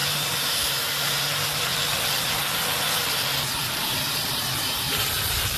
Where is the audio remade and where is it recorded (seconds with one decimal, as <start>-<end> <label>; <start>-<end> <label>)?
0.0-1.7 remade; 1.7-3.7 recorded; 3.7-5.6 remade